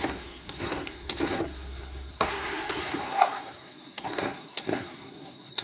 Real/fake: fake